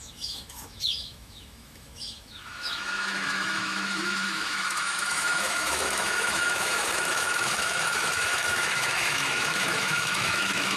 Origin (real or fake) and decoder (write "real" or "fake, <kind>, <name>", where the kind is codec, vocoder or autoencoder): fake, autoencoder, DAC-VAE